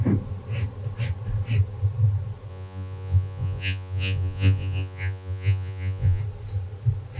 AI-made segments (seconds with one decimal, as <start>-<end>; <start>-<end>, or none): 2.5-6.2